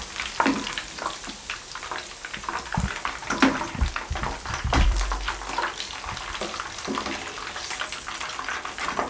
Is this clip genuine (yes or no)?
no